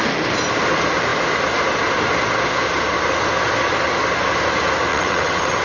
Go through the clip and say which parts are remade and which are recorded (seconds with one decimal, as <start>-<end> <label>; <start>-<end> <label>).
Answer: 0.0-4.9 recorded; 4.9-5.6 remade